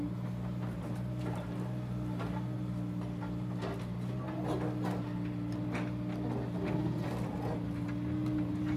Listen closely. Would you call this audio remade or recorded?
recorded